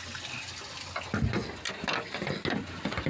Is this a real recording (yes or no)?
yes